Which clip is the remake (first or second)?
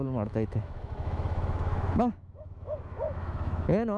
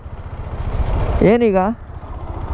first